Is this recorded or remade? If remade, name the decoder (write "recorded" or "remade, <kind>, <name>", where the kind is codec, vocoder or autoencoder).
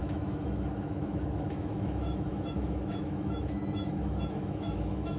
remade, autoencoder, DAC-VAE